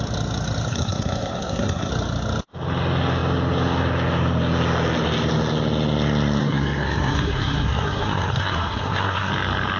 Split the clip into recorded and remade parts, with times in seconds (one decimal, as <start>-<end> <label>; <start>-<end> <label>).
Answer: 0.0-0.7 recorded; 0.7-1.9 remade; 1.9-6.4 recorded; 6.4-9.3 remade; 9.3-9.8 recorded